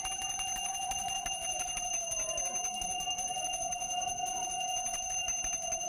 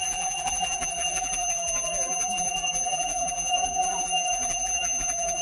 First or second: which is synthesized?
second